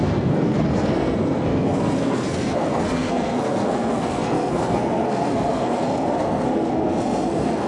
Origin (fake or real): fake